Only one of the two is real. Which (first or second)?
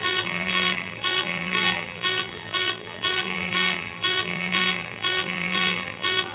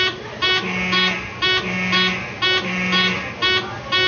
second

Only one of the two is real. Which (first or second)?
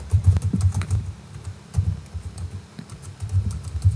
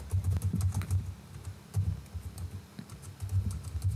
second